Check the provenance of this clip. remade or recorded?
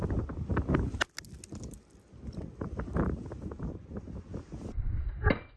recorded